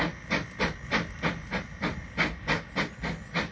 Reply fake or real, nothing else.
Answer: real